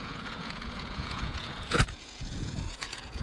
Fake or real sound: fake